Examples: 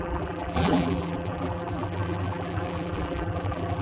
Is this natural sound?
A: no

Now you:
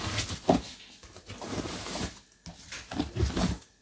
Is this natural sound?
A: yes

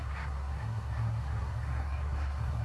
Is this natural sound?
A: no